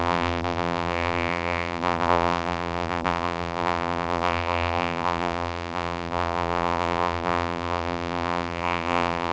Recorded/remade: remade